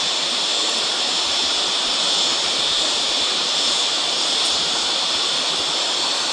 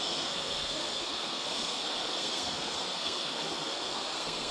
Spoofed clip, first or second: second